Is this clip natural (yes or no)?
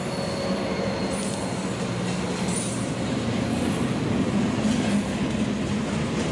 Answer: yes